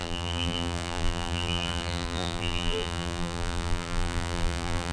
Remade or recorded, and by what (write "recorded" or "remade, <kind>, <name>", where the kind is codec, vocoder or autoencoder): remade, vocoder, BigVGAN v2